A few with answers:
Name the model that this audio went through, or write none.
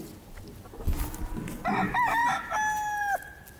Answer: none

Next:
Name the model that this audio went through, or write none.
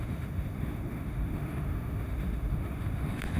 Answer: autoencoder, DAC-VAE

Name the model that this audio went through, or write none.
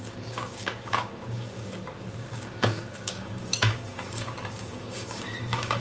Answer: codec, DAC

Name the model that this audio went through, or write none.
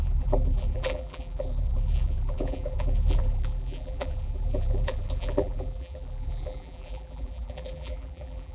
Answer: vocoder, BigVGAN v2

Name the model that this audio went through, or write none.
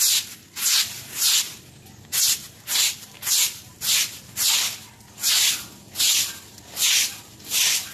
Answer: none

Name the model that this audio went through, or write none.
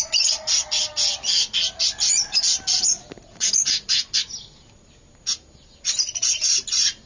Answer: none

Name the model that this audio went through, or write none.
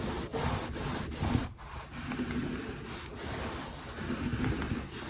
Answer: none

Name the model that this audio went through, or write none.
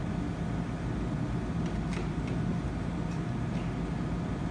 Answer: none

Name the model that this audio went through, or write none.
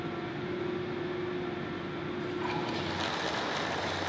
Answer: none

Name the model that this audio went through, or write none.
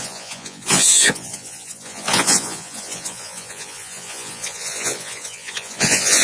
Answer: vocoder, Vocos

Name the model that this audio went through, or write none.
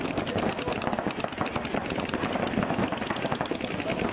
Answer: none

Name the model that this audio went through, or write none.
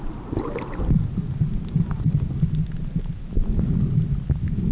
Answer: none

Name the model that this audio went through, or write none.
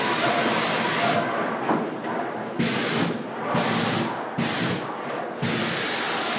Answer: none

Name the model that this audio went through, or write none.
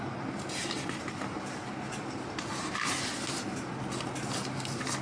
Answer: none